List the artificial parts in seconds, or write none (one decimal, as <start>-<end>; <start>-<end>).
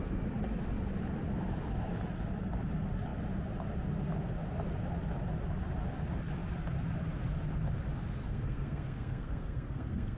8.2-10.2